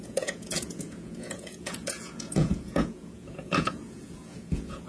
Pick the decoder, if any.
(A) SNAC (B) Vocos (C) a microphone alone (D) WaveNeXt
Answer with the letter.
B